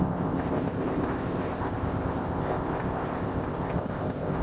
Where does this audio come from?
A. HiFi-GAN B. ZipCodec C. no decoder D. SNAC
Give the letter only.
B